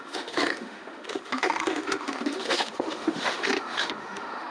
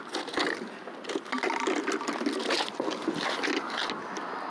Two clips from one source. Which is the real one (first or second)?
second